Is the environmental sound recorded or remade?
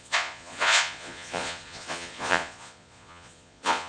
remade